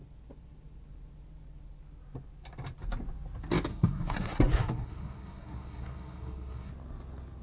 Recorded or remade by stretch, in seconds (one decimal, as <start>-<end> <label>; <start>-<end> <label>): 0.0-3.7 recorded; 3.7-6.7 remade; 6.7-7.4 recorded